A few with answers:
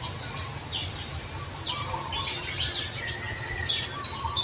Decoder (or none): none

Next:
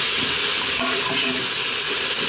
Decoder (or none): none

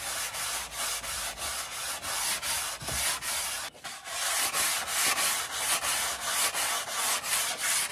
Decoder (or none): none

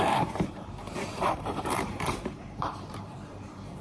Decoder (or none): vocoder, BigVGAN v2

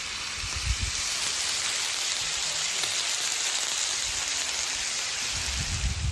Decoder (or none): vocoder, BigVGAN v2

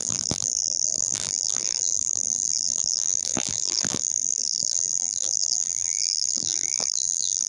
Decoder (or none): vocoder, BigVGAN v2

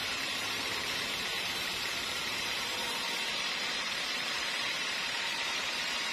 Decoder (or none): vocoder, BigVGAN v2